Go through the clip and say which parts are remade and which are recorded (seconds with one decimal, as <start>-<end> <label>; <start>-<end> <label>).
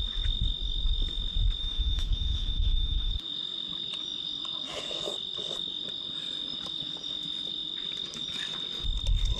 0.0-1.6 recorded; 1.6-3.1 remade; 3.1-9.4 recorded